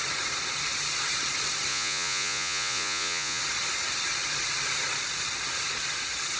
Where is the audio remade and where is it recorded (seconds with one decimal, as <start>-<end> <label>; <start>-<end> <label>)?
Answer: 0.0-1.7 recorded; 1.7-3.4 remade; 3.4-6.4 recorded